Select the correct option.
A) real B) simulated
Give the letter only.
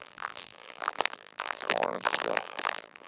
B